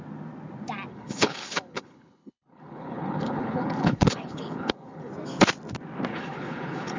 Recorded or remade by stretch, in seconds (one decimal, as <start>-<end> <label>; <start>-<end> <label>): 0.0-0.9 recorded; 0.9-5.1 remade; 5.1-6.1 recorded; 6.1-7.0 remade

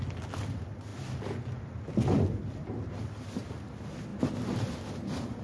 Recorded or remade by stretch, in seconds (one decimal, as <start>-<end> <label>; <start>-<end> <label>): 0.0-5.4 recorded

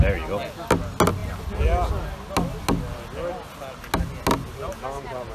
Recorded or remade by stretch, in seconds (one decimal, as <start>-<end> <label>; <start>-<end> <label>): 0.0-5.3 recorded

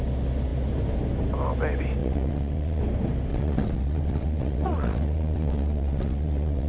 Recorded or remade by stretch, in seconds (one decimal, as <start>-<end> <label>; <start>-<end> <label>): 0.0-2.0 recorded; 2.0-2.8 remade; 2.8-3.3 recorded; 3.3-6.7 remade

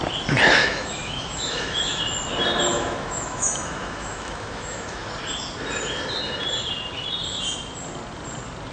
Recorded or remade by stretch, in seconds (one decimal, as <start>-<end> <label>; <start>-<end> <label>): 0.0-0.6 recorded; 0.6-2.0 remade; 2.0-2.7 recorded; 2.7-5.1 remade; 5.1-8.7 recorded

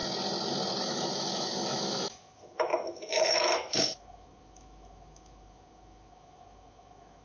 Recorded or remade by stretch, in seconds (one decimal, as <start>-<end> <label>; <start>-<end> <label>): 0.0-0.8 recorded; 0.8-7.2 remade